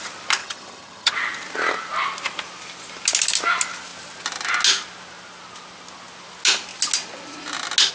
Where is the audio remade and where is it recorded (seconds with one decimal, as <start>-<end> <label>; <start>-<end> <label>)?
0.0-0.4 recorded; 0.4-1.1 remade; 1.1-7.9 recorded